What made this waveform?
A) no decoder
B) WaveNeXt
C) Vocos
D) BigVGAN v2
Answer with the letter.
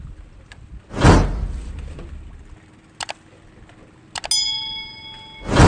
A